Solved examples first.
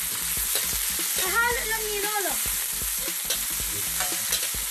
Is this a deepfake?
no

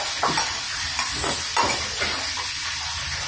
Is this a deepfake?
no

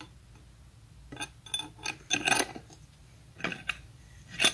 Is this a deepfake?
no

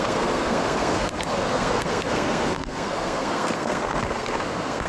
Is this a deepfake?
yes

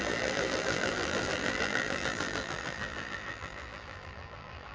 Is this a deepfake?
yes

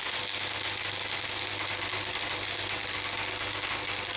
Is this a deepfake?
no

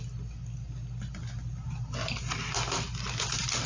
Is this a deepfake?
no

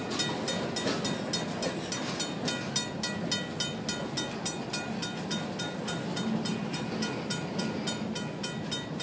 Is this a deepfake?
no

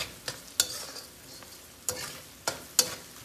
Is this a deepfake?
no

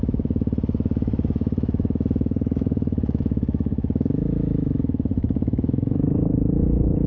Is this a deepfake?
yes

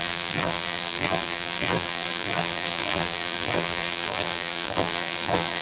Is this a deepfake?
yes